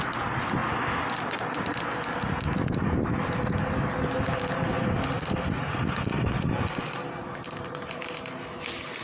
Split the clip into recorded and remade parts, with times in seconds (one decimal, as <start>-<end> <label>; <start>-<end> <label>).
0.0-9.0 recorded